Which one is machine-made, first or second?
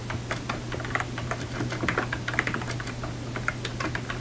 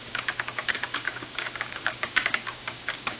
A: second